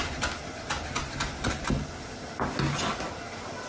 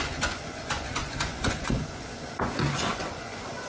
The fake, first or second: second